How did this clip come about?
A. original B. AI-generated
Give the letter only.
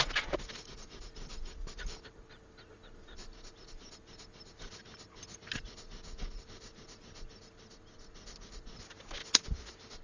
A